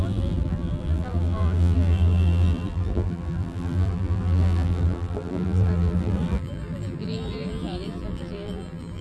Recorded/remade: remade